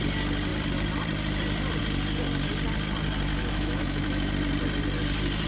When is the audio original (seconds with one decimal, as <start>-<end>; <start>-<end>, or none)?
0.0-3.3; 4.3-5.5